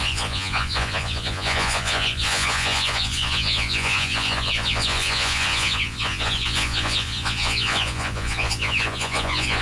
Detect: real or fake fake